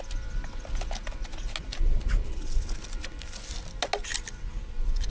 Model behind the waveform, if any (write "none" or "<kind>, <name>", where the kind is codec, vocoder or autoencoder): none